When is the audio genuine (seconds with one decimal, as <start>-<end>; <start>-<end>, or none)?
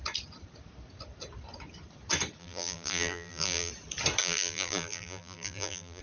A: 0.0-2.4; 3.7-4.2